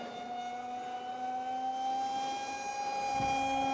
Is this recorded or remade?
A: recorded